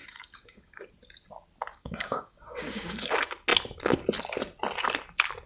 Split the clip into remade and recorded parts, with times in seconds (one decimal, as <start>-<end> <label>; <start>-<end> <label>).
0.0-0.9 remade; 0.9-1.7 recorded; 1.7-3.1 remade; 3.1-5.5 recorded